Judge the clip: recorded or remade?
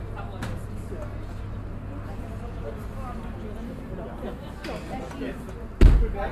recorded